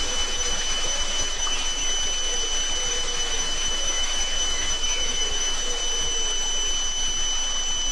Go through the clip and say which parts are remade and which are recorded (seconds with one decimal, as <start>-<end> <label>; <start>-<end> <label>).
0.0-1.8 remade; 1.8-2.9 recorded; 2.9-5.8 remade; 5.8-7.9 recorded